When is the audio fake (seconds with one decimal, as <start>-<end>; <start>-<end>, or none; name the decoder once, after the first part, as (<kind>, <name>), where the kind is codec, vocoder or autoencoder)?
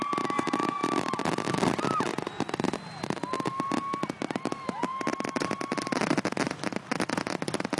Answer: none